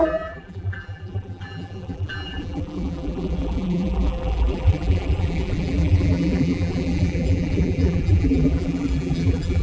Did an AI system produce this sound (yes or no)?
yes